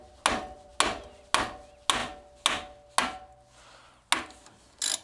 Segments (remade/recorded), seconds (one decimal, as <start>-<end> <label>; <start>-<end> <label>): 0.0-5.0 recorded